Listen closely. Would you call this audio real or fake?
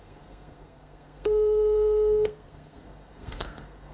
fake